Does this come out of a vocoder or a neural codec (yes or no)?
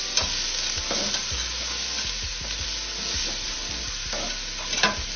no